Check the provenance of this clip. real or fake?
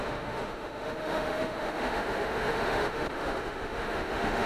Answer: fake